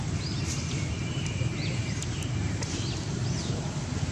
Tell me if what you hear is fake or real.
real